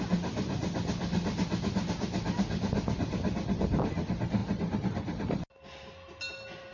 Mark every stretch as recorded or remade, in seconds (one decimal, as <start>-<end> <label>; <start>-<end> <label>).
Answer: 0.0-6.7 recorded

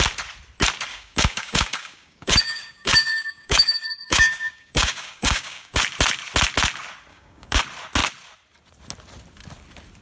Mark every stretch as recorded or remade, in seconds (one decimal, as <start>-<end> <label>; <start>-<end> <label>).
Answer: 0.0-0.9 recorded; 0.9-5.8 remade; 5.8-7.1 recorded; 7.1-7.6 remade; 7.6-10.0 recorded